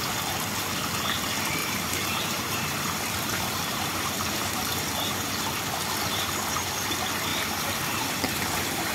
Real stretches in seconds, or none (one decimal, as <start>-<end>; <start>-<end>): 0.0-1.6; 5.3-7.3

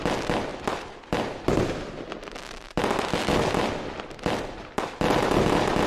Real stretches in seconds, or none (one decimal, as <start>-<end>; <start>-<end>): 0.0-5.9

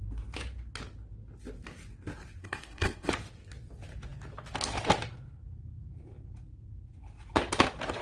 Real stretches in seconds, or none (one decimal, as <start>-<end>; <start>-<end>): 0.0-2.4; 3.1-8.0

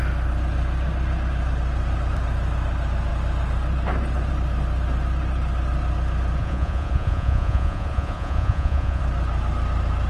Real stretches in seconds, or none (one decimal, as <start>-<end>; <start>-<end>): 0.0-6.4; 9.0-10.1

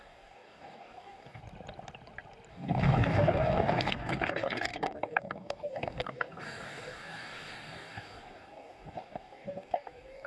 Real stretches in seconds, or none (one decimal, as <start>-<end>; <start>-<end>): 1.4-2.5

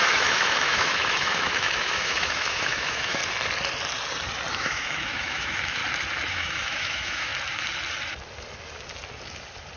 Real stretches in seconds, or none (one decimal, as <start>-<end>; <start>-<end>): 3.2-4.5; 5.8-6.3; 7.3-9.8